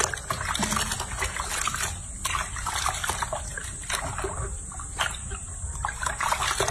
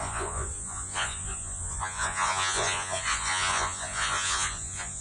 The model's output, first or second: second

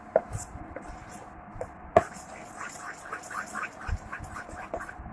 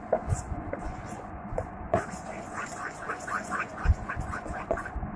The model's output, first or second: second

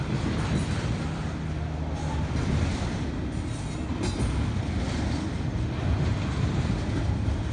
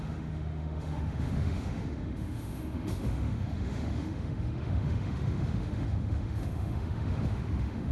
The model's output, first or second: second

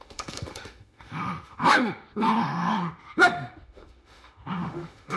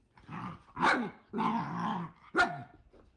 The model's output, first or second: first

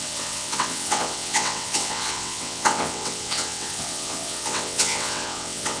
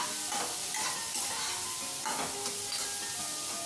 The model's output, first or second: first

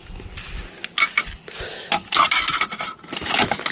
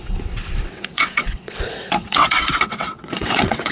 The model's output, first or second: second